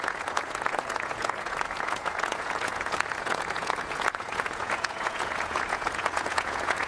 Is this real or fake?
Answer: fake